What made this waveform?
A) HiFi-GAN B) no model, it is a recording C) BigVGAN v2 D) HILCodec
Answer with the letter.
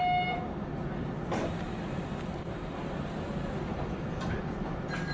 B